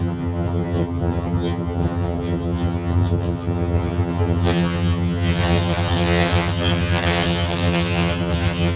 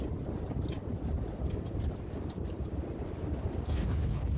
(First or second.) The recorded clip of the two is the second